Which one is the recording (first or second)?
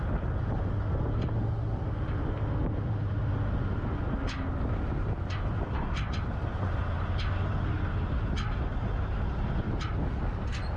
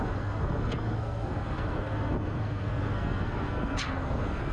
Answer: first